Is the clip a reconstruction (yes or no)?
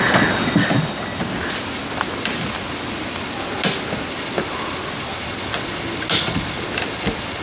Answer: no